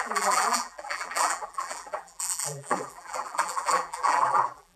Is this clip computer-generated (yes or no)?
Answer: yes